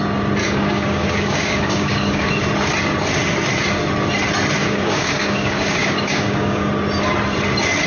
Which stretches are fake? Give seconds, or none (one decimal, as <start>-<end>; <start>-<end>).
0.4-2.3; 4.6-6.7